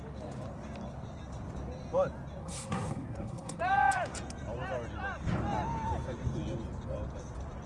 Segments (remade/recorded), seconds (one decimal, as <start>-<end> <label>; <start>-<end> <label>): 0.0-2.4 recorded; 2.4-3.6 remade; 3.6-7.7 recorded